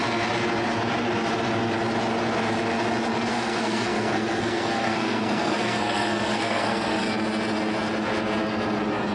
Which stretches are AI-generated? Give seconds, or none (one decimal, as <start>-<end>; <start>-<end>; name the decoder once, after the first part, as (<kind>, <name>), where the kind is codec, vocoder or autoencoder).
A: 3.3-7.0 (codec, SNAC)